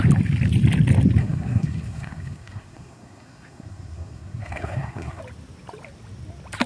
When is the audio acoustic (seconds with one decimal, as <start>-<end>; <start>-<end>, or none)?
0.0-1.2; 5.2-6.7